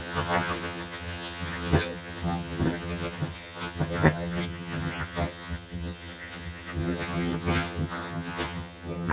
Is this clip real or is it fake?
fake